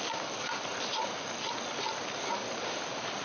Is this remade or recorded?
recorded